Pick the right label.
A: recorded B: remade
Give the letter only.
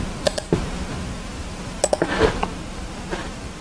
A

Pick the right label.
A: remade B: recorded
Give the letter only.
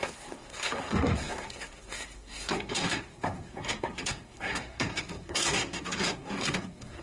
A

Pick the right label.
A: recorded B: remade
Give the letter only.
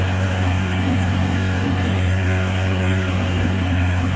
B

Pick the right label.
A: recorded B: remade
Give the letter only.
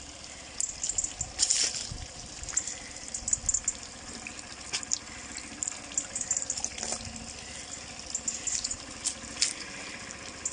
A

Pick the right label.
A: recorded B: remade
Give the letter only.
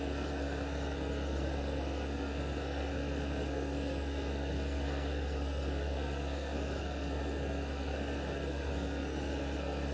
B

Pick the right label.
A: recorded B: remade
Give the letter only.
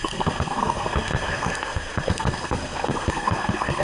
B